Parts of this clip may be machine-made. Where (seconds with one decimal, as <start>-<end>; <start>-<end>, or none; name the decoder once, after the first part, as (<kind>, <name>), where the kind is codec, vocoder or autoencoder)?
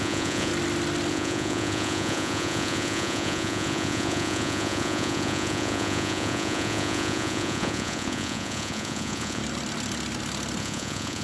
0.0-0.5 (vocoder, Vocos); 1.1-9.4; 10.6-11.2